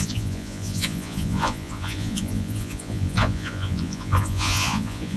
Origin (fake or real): fake